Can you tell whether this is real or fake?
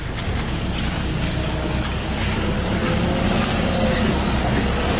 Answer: fake